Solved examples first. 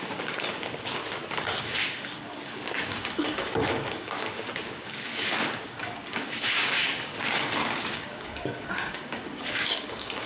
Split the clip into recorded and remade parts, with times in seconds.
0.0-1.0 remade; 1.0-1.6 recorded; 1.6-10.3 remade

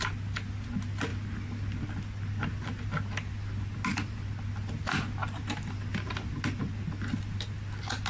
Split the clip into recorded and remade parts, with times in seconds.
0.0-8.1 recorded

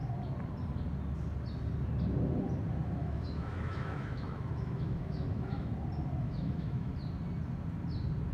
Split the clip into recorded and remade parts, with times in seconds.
0.0-3.0 recorded; 3.0-5.7 remade; 5.7-6.2 recorded; 6.2-6.9 remade; 6.9-8.3 recorded

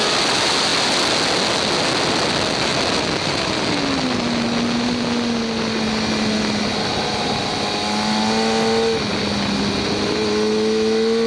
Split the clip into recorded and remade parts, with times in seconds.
0.0-11.3 recorded

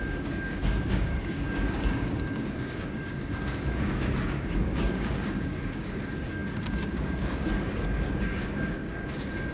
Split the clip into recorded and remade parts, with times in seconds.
0.0-9.5 remade

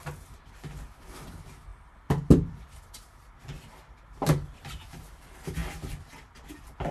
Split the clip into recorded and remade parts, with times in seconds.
0.0-6.9 recorded